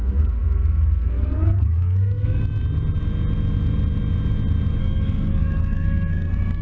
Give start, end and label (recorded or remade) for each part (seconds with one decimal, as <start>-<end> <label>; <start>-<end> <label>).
0.0-2.4 remade; 2.4-4.8 recorded; 4.8-6.6 remade

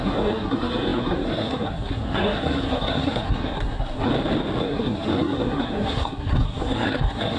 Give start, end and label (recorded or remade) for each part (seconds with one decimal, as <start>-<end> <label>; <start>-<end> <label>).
0.0-4.1 remade; 4.1-4.6 recorded; 4.6-7.4 remade

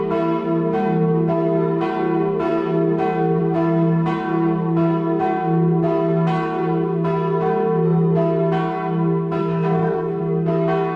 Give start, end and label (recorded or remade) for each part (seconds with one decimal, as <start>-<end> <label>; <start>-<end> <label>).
0.0-9.4 recorded; 9.4-10.2 remade; 10.2-11.0 recorded